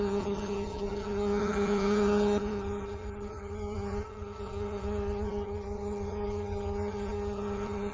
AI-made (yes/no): yes